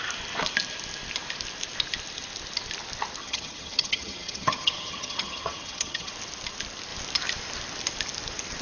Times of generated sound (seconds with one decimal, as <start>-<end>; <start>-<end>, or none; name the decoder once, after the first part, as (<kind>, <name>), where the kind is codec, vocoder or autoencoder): 3.2-6.1 (vocoder, HiFi-GAN)